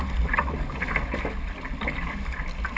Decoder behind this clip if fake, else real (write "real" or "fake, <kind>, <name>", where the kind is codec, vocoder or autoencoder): real